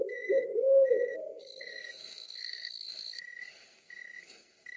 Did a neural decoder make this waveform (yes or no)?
yes